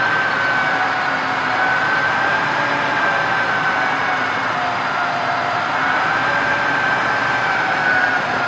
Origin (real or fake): fake